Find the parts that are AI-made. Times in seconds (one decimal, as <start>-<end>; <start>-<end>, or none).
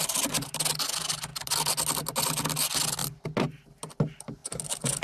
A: none